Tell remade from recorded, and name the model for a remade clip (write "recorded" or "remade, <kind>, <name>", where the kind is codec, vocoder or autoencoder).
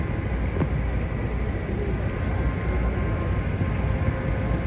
recorded